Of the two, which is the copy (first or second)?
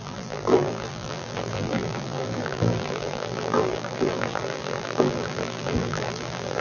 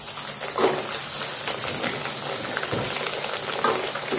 first